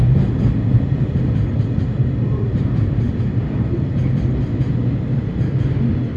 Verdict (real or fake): real